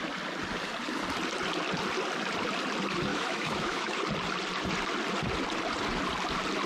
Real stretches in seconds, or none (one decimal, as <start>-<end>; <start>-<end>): 0.0-3.1; 4.0-6.7